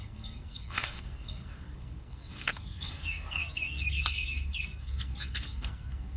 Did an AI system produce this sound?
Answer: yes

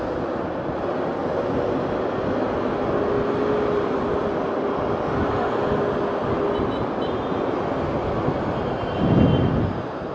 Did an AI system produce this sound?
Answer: no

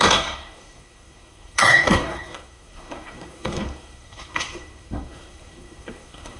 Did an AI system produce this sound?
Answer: yes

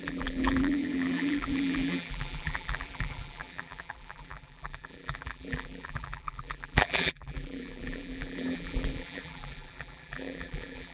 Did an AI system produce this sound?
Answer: yes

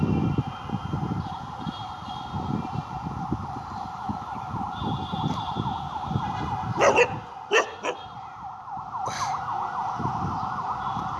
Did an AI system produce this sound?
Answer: no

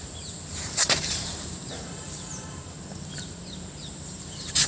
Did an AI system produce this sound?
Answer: yes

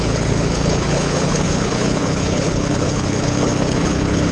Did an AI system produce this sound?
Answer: yes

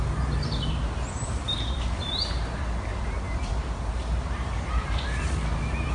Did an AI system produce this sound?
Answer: yes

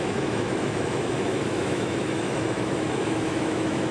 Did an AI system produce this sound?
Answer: yes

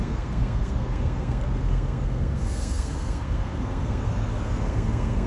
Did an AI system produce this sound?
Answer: yes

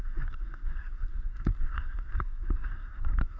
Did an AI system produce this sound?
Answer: yes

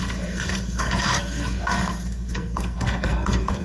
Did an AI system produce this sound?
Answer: yes